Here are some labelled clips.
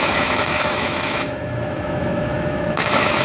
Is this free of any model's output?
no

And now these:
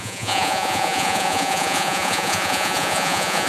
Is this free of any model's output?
no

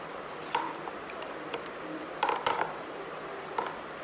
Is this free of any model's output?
no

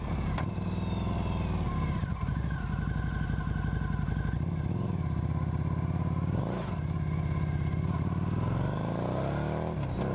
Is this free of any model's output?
yes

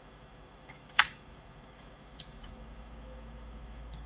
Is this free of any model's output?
no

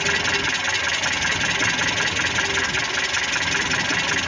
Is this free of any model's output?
yes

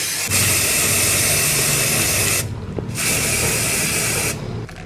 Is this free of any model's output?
yes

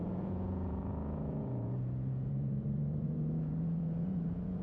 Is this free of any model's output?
no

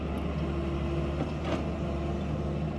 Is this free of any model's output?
yes